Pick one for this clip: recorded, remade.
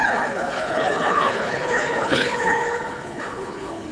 remade